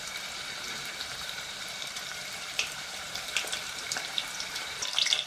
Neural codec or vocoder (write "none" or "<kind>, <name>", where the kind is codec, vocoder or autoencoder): vocoder, BigVGAN v2